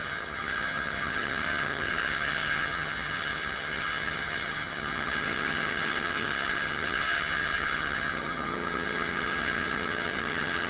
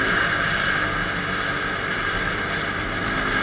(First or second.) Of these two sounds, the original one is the second